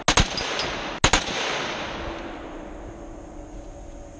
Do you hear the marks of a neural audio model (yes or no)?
no